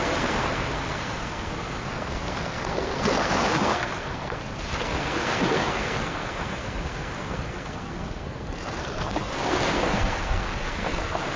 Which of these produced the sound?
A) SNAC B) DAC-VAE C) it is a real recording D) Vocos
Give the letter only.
A